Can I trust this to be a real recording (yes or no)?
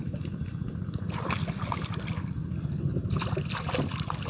yes